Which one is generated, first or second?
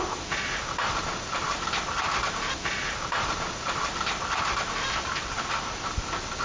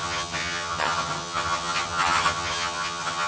second